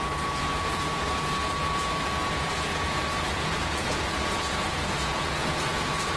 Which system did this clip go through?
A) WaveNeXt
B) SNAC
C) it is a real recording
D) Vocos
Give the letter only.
D